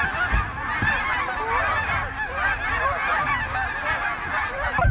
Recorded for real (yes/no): yes